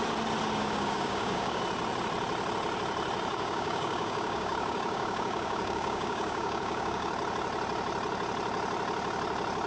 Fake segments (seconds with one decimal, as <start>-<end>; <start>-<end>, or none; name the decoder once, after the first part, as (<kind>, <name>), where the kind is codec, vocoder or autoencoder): 0.6-1.6 (codec, DAC); 3.3-7.1